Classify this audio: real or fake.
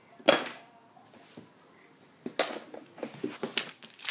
real